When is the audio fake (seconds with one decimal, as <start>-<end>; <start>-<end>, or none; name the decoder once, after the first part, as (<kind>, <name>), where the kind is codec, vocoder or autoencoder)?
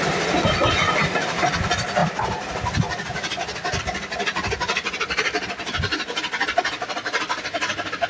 none